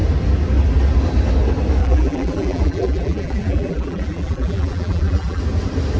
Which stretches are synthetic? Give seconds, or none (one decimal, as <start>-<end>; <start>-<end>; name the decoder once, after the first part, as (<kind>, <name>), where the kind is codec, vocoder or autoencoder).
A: 1.8-5.4 (vocoder, BigVGAN v2)